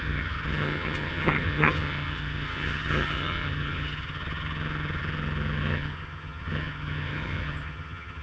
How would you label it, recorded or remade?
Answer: remade